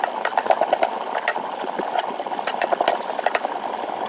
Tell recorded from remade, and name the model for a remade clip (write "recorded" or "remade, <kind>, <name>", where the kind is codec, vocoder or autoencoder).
recorded